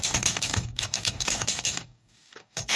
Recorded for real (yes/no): no